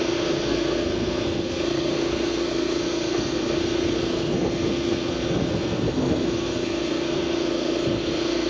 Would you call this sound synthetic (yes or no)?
yes